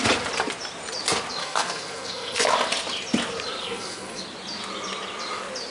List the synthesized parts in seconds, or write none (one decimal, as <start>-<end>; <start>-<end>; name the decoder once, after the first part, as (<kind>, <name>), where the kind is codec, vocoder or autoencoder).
1.4-2.5 (codec, SNAC); 3.6-4.2

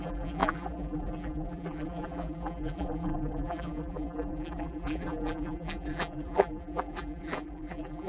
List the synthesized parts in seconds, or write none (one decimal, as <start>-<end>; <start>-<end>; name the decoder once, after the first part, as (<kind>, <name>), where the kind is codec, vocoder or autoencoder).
0.0-8.1 (vocoder, BigVGAN v2)

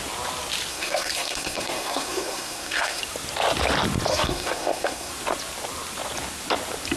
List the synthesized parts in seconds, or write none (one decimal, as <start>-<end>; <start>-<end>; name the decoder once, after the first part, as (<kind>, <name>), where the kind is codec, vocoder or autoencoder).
0.7-3.0 (codec, SNAC); 4.1-5.1

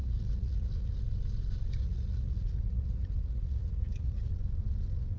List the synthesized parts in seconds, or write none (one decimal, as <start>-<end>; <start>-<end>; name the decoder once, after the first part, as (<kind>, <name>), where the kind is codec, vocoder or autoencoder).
0.0-1.0 (vocoder, Vocos); 1.8-4.3

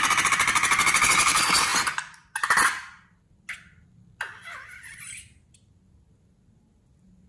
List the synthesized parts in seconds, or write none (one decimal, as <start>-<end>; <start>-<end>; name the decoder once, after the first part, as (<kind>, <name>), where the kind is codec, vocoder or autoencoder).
none

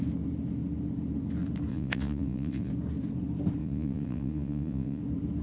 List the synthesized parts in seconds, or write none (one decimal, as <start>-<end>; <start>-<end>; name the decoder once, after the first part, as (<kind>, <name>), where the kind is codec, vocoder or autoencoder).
1.7-2.7 (vocoder, Vocos); 3.6-5.0

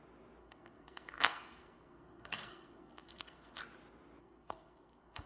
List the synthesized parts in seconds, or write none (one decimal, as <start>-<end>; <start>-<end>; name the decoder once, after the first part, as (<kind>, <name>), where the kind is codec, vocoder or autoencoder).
0.4-3.6 (codec, SNAC); 4.2-5.3